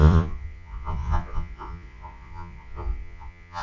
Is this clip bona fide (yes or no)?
no